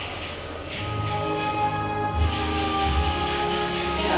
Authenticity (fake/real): fake